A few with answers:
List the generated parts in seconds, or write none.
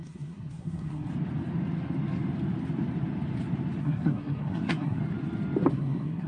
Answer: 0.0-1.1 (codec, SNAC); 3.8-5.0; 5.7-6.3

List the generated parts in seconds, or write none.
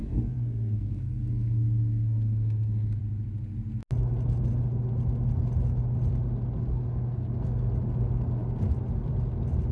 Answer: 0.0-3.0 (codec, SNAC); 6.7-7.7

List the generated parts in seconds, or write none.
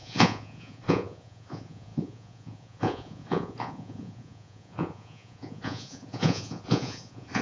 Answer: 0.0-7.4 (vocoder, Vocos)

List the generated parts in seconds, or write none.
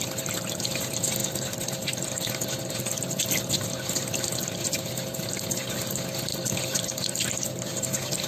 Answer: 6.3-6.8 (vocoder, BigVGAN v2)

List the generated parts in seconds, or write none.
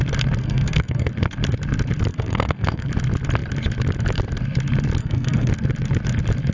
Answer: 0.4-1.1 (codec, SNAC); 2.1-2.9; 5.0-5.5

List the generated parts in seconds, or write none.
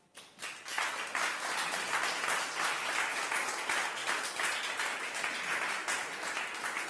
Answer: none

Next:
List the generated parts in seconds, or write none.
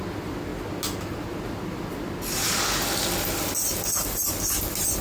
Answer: none